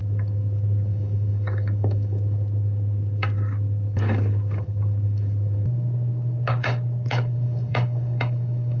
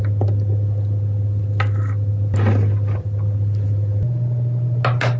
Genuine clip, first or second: second